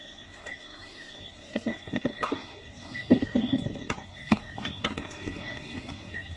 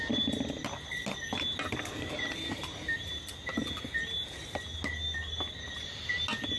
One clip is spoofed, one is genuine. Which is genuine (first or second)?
second